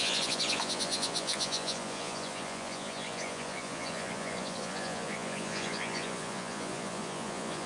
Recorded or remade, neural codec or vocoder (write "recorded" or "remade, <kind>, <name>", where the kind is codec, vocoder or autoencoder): remade, vocoder, Vocos